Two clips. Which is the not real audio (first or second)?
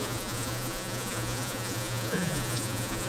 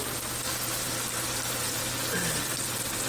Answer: first